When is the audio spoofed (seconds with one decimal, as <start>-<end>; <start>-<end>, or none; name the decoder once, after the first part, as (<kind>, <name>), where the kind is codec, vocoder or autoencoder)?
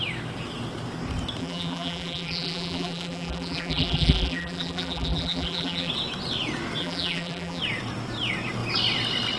1.4-5.9 (vocoder, BigVGAN v2); 6.8-7.6